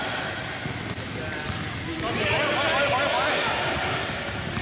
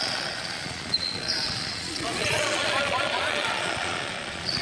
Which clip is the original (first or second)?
first